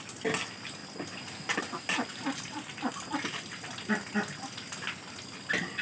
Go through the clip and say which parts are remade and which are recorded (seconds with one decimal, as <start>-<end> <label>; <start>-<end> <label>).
0.0-5.8 recorded

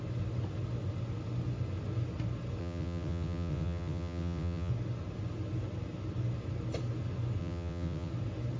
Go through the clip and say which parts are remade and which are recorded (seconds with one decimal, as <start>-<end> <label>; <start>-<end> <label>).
0.0-2.6 recorded; 2.6-4.7 remade; 4.7-7.4 recorded; 7.4-8.1 remade; 8.1-8.6 recorded

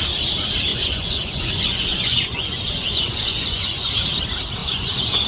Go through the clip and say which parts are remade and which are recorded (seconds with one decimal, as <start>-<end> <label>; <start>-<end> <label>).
0.0-0.7 recorded; 0.7-3.9 remade; 3.9-4.6 recorded; 4.6-5.3 remade

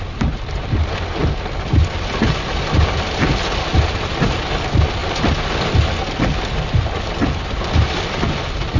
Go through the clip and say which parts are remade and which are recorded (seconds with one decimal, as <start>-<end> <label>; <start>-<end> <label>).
0.0-8.8 recorded